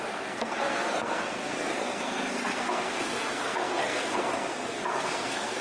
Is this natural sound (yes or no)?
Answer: no